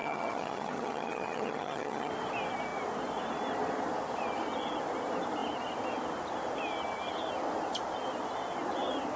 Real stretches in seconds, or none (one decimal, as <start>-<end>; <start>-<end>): 2.1-9.2

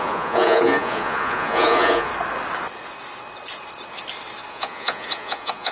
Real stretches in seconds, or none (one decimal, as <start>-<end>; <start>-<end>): 2.1-4.5